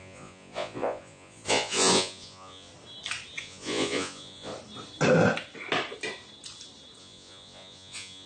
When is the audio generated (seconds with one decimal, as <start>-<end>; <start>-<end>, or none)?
0.0-2.7; 3.4-4.5; 7.0-8.3